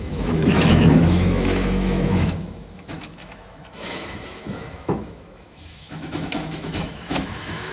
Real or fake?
fake